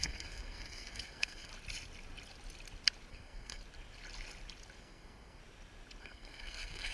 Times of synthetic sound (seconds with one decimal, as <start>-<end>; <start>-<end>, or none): 0.0-1.5; 3.1-3.6; 4.8-5.4; 6.0-6.9